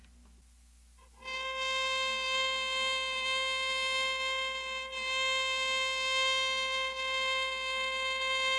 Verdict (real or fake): real